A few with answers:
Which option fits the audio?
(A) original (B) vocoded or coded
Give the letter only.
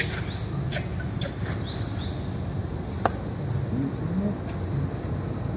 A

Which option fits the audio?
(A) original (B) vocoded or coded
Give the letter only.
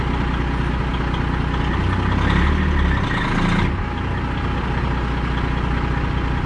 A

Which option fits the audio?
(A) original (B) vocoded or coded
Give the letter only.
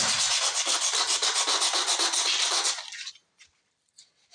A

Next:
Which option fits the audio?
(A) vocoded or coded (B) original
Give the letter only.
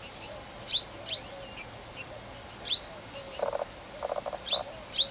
B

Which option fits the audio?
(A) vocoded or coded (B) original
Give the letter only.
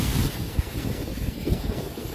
A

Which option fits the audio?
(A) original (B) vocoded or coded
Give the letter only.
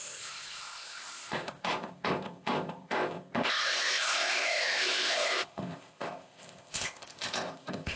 B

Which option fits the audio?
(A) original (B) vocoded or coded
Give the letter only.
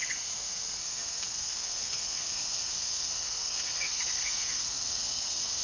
B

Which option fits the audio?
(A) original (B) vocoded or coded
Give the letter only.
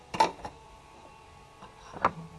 A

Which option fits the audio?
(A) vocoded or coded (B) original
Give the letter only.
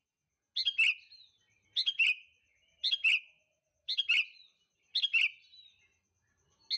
B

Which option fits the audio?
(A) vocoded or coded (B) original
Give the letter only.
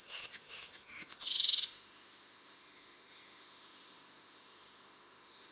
A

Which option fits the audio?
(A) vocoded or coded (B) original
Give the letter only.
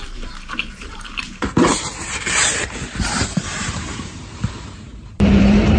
A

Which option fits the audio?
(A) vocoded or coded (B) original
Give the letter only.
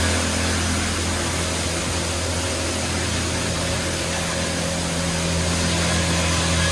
B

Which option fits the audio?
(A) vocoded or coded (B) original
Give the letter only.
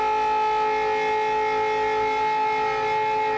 B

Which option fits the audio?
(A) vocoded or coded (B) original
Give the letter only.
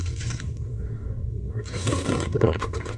A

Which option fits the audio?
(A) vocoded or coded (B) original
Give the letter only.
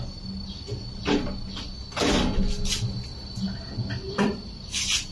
B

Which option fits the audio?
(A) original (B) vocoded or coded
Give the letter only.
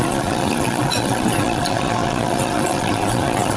B